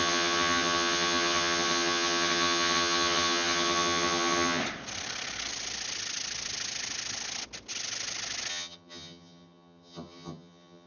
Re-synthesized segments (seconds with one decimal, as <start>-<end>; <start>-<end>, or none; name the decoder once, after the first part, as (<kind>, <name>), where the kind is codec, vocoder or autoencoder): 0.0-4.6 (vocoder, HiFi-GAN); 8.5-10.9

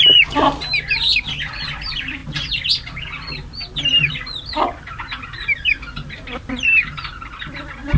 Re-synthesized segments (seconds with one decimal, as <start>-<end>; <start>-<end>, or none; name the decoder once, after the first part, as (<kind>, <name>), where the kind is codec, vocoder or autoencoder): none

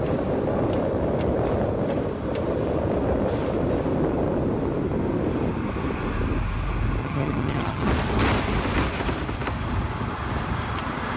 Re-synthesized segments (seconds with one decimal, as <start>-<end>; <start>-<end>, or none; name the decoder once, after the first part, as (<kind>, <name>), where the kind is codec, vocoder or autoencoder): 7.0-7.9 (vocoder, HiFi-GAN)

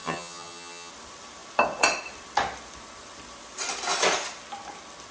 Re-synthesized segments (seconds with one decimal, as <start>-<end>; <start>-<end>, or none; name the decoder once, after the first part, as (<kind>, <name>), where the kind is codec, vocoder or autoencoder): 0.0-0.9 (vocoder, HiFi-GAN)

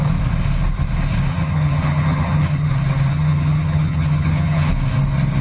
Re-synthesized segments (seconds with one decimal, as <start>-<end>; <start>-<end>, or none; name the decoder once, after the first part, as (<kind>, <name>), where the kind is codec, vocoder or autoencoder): 1.3-2.7 (vocoder, HiFi-GAN); 3.1-4.7